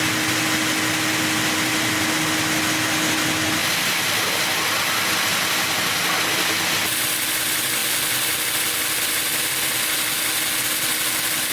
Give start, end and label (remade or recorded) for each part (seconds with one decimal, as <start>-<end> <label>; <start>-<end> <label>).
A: 0.0-11.5 recorded